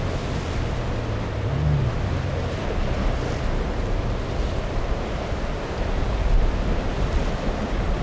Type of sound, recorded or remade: recorded